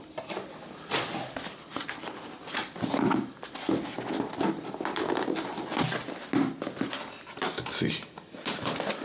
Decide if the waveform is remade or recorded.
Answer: recorded